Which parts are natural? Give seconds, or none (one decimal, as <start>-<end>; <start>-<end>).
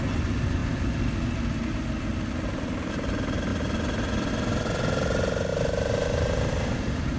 0.0-5.5